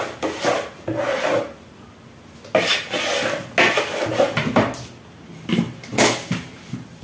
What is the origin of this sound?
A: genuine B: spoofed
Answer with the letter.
A